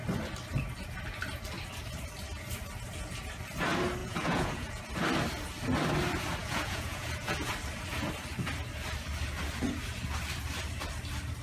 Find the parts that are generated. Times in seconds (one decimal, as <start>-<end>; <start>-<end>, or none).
4.0-4.8; 6.4-7.5